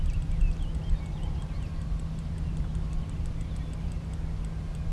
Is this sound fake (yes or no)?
no